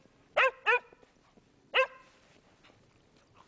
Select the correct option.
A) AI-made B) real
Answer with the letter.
B